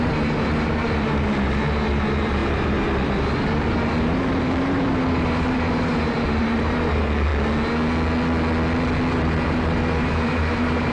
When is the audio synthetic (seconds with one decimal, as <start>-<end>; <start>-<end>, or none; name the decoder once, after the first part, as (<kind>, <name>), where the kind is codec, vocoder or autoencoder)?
0.0-7.3 (vocoder, BigVGAN v2); 9.1-10.9